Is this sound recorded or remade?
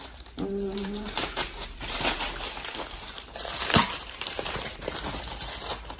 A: remade